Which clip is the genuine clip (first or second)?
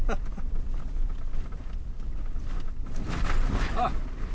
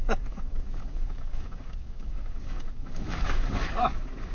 first